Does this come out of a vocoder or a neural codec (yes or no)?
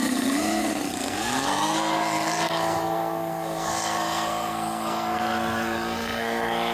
yes